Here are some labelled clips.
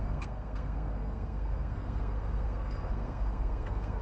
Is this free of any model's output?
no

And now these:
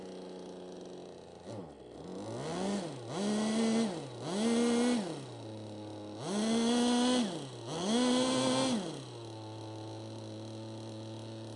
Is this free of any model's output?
yes